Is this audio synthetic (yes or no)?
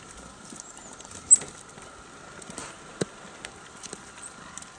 no